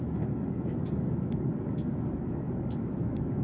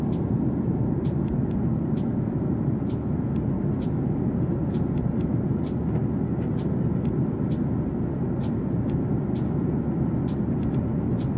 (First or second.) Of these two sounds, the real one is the second